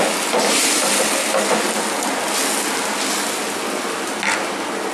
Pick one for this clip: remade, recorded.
recorded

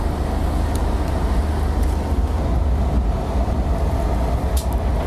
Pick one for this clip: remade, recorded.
recorded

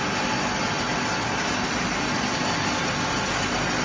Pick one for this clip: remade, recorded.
recorded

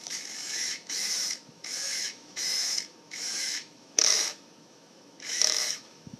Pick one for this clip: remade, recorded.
remade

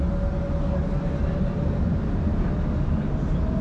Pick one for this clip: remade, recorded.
recorded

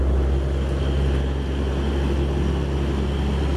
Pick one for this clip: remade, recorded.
recorded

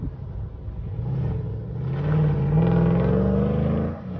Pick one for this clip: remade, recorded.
recorded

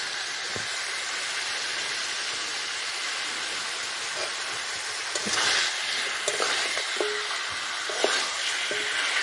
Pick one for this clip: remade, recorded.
recorded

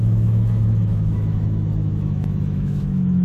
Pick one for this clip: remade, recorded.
remade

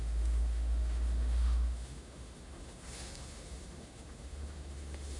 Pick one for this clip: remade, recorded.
remade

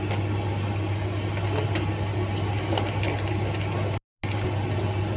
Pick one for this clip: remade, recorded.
recorded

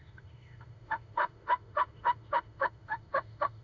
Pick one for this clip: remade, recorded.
remade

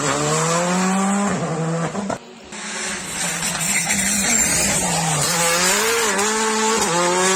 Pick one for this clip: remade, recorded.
recorded